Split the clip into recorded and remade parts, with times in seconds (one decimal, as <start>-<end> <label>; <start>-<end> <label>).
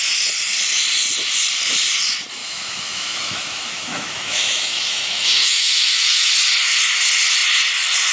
0.0-2.4 recorded; 2.4-6.3 remade; 6.3-8.1 recorded